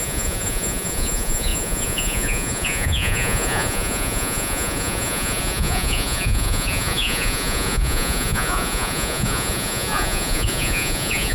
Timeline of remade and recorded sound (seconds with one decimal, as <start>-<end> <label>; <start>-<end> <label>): 0.0-11.3 remade